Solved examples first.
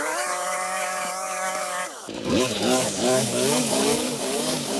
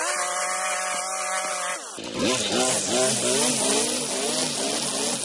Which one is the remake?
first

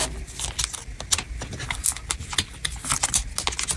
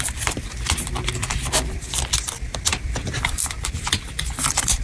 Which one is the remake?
second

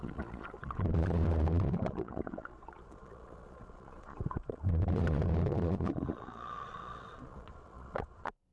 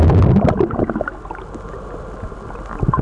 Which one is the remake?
first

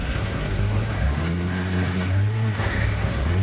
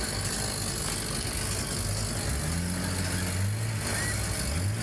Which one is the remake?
first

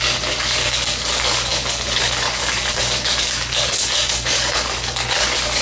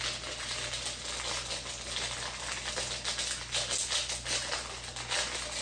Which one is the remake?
first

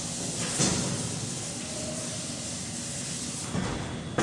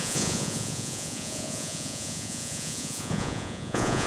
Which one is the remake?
second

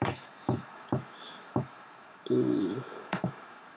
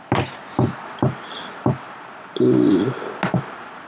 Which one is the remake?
first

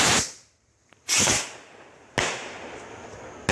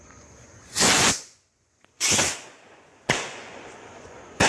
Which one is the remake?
second